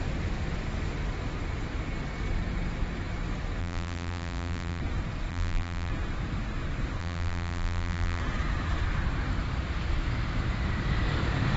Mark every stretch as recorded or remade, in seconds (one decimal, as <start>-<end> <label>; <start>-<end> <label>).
0.0-3.6 recorded; 3.6-4.8 remade; 4.8-5.3 recorded; 5.3-5.9 remade; 5.9-7.0 recorded; 7.0-8.2 remade; 8.2-11.6 recorded